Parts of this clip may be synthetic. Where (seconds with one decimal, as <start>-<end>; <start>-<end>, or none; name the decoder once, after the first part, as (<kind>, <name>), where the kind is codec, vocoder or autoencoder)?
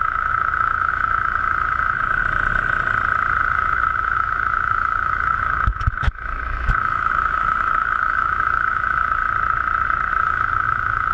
0.0-2.2 (autoencoder, DAC-VAE); 3.4-9.2; 10.2-11.1